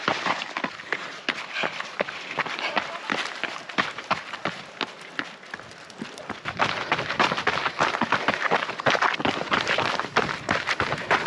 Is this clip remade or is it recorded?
remade